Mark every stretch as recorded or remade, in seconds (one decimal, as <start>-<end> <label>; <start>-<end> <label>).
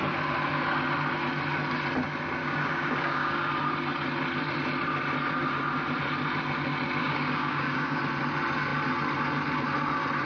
0.0-2.4 recorded; 2.4-3.5 remade; 3.5-7.0 recorded; 7.0-8.0 remade; 8.0-10.3 recorded